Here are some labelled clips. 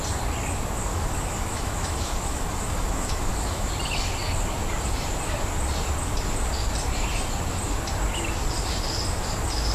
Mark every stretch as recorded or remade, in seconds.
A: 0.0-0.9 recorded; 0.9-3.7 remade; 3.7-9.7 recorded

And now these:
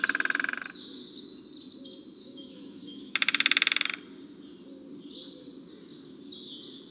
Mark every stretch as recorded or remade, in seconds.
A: 0.0-2.2 recorded; 2.2-3.1 remade; 3.1-6.9 recorded

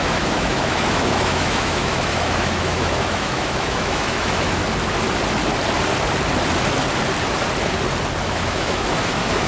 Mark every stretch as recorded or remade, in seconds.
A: 0.0-4.6 remade; 4.6-8.2 recorded; 8.2-9.5 remade